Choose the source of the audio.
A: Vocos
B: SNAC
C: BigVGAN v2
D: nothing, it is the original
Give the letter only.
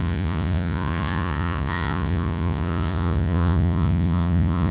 A